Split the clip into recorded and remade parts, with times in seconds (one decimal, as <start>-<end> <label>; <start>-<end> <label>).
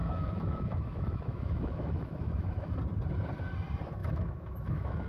0.0-2.7 remade; 2.7-4.0 recorded; 4.0-5.1 remade